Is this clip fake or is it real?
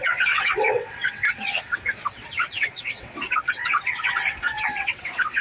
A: fake